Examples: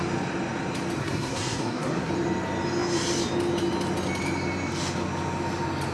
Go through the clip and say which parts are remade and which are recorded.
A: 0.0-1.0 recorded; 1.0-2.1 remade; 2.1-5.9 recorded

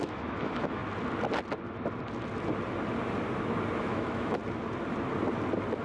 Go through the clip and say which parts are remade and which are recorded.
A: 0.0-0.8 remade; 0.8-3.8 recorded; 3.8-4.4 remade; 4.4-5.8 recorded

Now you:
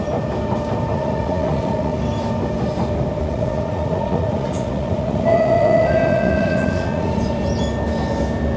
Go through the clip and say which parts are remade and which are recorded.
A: 0.0-0.9 recorded; 0.9-2.0 remade; 2.0-3.2 recorded; 3.2-7.2 remade; 7.2-8.6 recorded